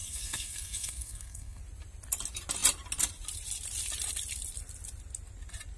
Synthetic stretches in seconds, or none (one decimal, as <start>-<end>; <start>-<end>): 0.0-1.6